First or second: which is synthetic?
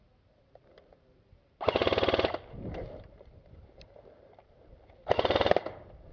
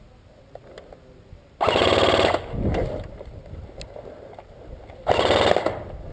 first